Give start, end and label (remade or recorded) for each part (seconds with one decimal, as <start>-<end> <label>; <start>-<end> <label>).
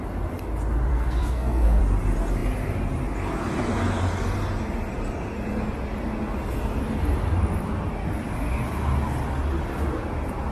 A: 0.0-0.9 recorded; 0.9-1.8 remade; 1.8-10.5 recorded